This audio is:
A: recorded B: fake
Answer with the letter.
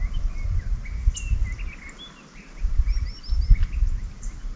A